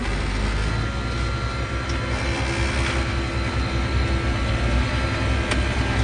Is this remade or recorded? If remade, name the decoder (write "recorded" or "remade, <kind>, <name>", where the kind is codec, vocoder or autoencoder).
recorded